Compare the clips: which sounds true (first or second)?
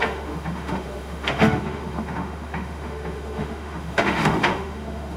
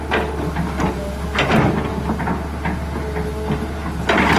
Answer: second